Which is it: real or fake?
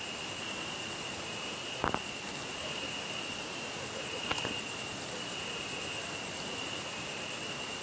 real